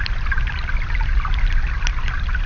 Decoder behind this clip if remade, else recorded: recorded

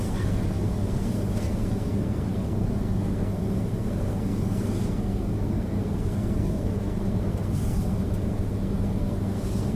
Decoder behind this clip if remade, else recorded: remade, codec, SNAC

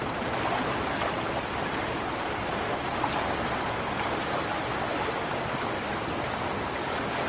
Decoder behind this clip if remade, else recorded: recorded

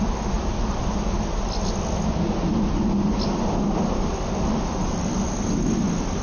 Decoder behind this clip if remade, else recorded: recorded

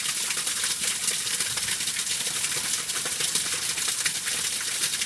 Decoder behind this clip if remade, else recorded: recorded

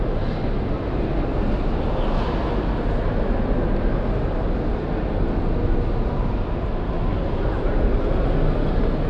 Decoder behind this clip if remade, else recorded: recorded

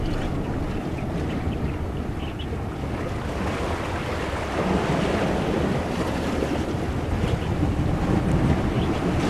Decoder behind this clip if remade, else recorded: recorded